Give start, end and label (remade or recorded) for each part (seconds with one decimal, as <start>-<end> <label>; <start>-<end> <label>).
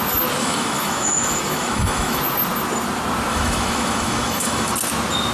0.0-0.4 recorded; 0.4-2.2 remade; 2.2-3.3 recorded; 3.3-4.7 remade; 4.7-5.3 recorded